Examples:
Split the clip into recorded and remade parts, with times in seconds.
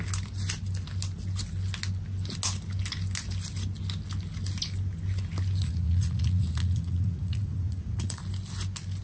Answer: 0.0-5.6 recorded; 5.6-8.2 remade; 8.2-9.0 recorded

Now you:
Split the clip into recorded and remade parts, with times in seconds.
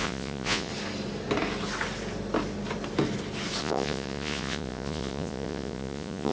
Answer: 0.0-0.7 remade; 0.7-3.6 recorded; 3.6-6.3 remade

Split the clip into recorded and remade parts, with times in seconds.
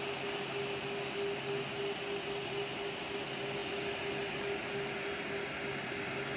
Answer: 0.0-6.4 recorded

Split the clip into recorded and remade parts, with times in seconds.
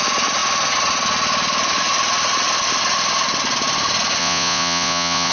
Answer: 0.0-4.2 recorded; 4.2-5.3 remade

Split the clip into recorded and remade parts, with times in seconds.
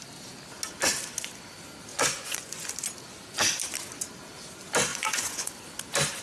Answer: 0.0-1.9 recorded; 1.9-2.7 remade; 2.7-4.9 recorded; 4.9-5.5 remade; 5.5-6.2 recorded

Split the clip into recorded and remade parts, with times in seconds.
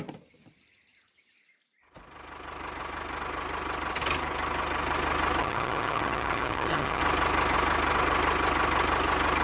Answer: 0.0-5.4 recorded; 5.4-7.0 remade; 7.0-9.4 recorded